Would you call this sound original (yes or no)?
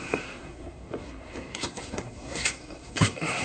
no